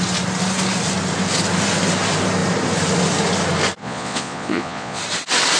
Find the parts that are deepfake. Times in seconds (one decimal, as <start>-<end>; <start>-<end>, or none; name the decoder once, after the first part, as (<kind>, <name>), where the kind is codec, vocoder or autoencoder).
3.8-5.0 (vocoder, Vocos)